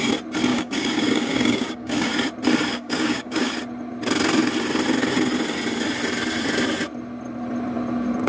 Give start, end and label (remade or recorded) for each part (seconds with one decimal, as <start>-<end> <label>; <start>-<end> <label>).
0.0-0.5 recorded; 0.5-2.1 remade; 2.1-2.7 recorded; 2.7-3.5 remade; 3.5-8.3 recorded